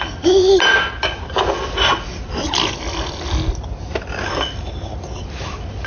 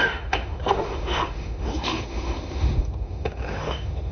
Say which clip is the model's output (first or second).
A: second